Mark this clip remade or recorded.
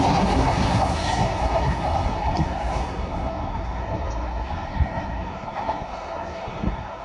remade